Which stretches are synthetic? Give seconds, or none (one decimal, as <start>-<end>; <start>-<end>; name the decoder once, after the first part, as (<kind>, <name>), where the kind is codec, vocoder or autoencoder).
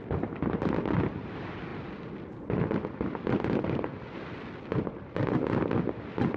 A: none